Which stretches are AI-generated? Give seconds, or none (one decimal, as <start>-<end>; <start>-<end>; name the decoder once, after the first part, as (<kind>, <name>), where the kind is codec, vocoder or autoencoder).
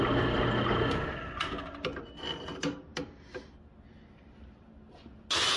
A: none